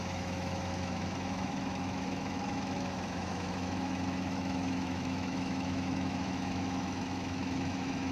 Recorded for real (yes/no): no